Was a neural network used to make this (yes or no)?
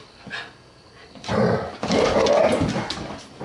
no